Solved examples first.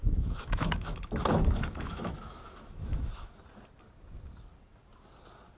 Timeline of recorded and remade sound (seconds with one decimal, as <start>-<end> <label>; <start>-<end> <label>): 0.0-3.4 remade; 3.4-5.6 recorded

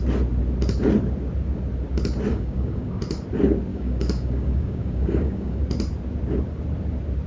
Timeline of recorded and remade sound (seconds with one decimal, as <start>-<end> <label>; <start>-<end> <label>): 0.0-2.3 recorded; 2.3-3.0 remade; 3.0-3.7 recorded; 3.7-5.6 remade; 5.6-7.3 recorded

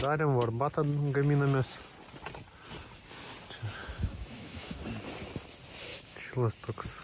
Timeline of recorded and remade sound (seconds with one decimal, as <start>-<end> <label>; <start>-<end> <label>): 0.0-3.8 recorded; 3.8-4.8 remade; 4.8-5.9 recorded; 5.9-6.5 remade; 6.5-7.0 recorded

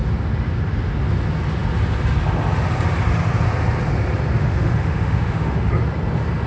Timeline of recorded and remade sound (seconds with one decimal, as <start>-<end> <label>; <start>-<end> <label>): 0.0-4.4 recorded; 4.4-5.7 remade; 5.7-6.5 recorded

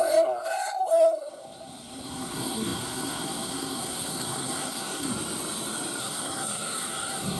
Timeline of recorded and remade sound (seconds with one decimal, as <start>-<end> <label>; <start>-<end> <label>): 0.0-5.1 remade; 5.1-6.0 recorded; 6.0-7.4 remade